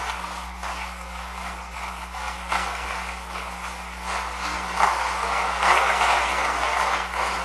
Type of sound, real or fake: fake